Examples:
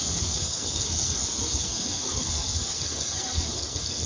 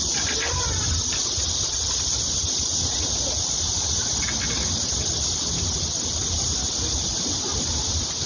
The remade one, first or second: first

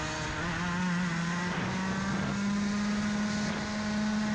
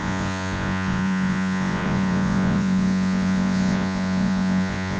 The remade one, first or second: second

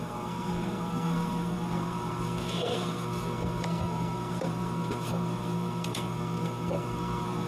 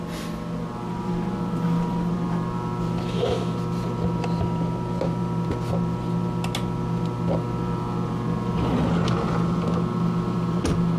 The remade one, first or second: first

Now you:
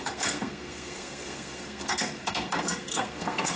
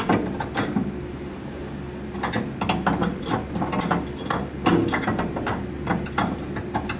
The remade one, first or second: first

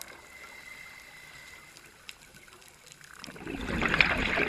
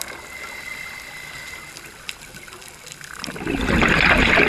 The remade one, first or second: first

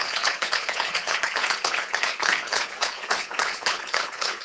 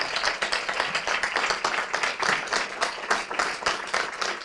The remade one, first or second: first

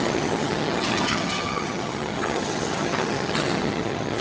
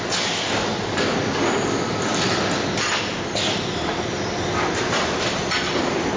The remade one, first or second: first